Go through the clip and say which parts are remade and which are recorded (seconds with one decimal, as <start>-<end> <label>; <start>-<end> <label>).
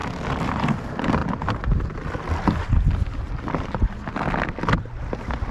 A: 0.0-5.5 recorded